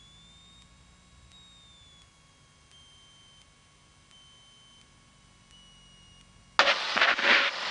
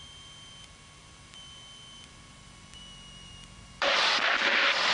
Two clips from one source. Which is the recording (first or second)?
first